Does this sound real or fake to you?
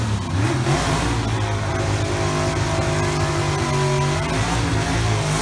real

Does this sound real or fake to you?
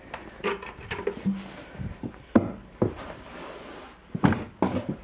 real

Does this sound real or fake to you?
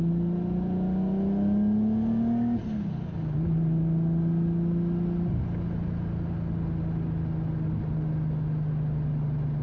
real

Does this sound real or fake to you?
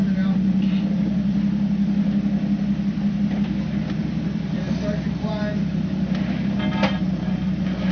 real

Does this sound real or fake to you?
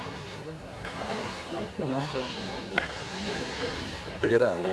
fake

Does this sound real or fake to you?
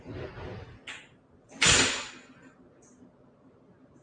real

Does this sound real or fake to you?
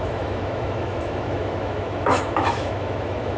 fake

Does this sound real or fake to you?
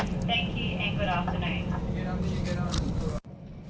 real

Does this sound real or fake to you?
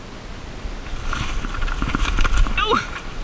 real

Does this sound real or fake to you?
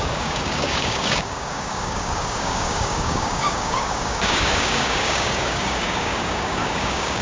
fake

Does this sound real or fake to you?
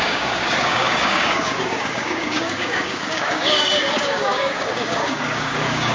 fake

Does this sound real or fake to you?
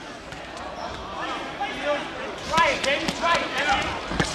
real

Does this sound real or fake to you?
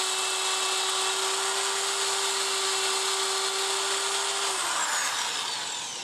real